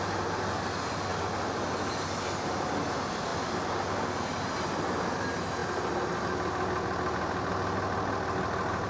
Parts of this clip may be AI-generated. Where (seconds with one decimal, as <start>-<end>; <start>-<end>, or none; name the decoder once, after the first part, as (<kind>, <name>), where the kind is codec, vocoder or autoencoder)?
none